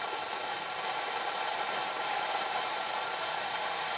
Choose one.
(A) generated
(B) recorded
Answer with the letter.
B